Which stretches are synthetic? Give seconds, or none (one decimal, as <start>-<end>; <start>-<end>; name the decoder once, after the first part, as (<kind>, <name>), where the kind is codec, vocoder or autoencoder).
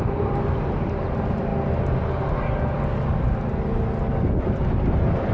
0.0-1.5 (vocoder, BigVGAN v2); 4.4-5.3